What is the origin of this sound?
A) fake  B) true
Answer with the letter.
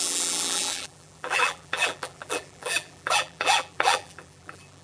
A